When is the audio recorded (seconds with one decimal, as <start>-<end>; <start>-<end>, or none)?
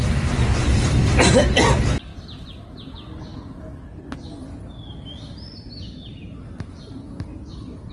0.0-0.6; 1.3-7.9